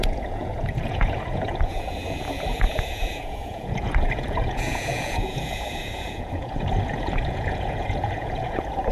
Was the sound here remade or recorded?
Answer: remade